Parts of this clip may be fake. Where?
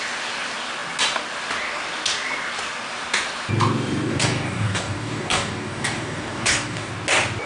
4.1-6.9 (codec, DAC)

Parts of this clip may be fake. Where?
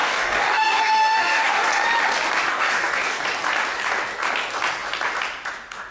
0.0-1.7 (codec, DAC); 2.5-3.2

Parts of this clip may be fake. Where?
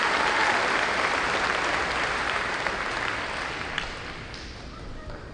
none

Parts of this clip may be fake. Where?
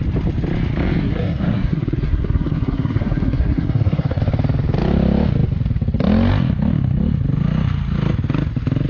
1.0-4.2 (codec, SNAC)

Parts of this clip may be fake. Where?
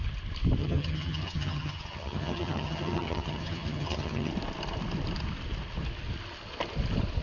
0.6-4.3 (vocoder, HiFi-GAN)